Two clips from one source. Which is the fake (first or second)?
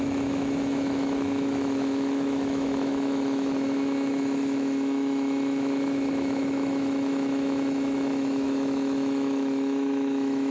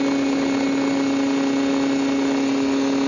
first